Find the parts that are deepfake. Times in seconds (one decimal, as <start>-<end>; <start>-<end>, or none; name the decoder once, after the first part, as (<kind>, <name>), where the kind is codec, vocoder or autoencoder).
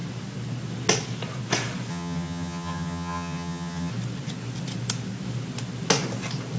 1.9-3.9 (vocoder, HiFi-GAN)